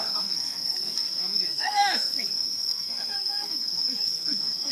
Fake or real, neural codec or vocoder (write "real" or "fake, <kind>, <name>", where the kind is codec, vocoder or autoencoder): fake, codec, SNAC